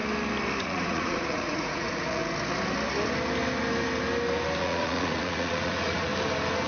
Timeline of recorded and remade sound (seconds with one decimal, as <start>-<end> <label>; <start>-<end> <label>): 0.0-0.6 recorded; 0.6-2.2 remade; 2.2-4.6 recorded; 4.6-6.1 remade; 6.1-6.7 recorded